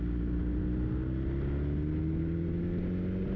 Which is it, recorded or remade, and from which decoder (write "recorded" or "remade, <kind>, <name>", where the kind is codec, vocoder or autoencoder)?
recorded